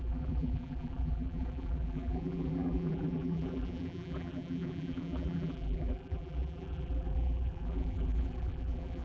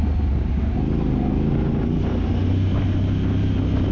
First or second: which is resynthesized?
first